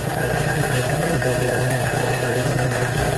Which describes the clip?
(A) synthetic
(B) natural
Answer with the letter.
A